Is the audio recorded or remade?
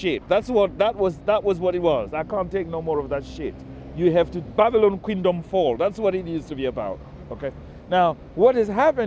recorded